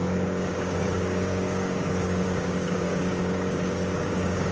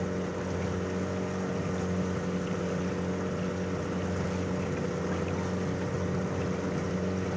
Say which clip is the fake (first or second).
first